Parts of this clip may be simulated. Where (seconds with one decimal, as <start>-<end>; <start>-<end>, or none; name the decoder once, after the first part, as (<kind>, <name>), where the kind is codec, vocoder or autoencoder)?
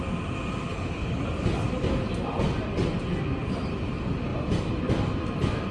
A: 0.7-1.2 (codec, HILCodec)